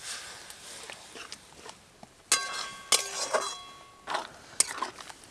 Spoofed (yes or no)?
no